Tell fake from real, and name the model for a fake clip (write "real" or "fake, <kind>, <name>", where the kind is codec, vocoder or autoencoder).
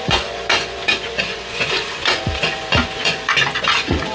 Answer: fake, vocoder, Vocos